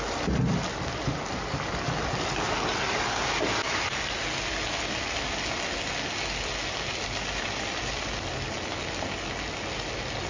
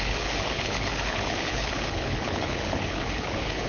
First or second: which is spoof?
second